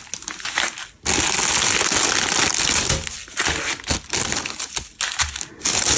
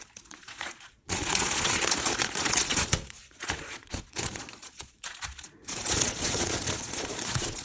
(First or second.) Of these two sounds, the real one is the first